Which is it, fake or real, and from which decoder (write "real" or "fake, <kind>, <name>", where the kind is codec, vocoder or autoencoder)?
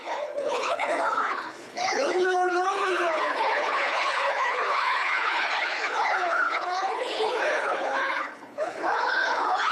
fake, codec, HILCodec